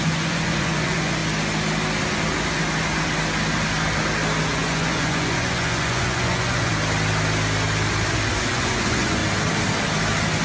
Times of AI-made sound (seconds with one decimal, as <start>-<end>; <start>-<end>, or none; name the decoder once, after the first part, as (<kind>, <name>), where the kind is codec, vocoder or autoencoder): 0.0-1.2 (vocoder, Vocos); 4.5-6.7; 8.5-9.2